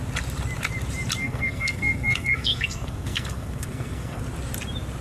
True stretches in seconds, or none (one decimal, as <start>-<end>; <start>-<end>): 0.0-1.2; 4.2-5.0